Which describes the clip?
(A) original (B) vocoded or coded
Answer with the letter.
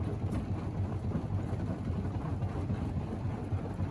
A